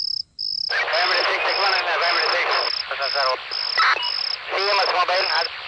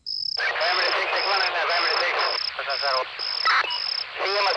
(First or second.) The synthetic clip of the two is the second